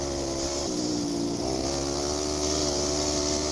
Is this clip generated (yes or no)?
no